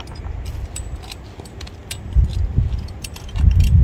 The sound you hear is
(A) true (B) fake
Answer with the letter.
A